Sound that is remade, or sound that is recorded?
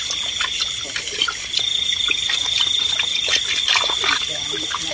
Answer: recorded